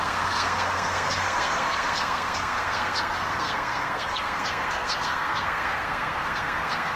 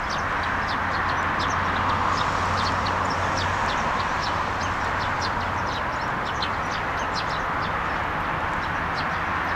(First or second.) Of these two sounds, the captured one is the second